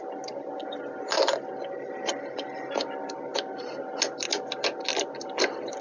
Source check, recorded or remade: recorded